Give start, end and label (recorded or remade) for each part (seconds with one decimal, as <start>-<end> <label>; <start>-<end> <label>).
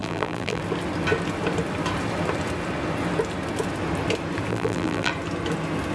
0.0-0.6 remade; 0.6-4.5 recorded; 4.5-5.1 remade; 5.1-5.9 recorded